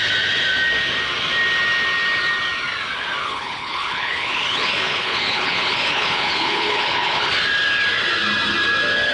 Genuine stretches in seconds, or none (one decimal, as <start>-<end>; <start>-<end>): 0.0-3.2; 7.3-9.1